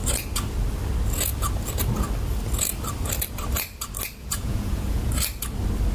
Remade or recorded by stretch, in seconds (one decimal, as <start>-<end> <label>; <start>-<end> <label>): 0.0-4.2 recorded; 4.2-5.1 remade; 5.1-5.9 recorded

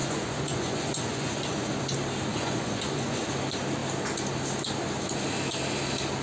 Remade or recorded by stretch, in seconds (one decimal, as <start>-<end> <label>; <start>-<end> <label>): 0.0-1.8 remade; 1.8-2.3 recorded; 2.3-3.3 remade; 3.3-6.2 recorded